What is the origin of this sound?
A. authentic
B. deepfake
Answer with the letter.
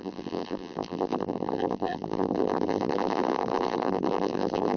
B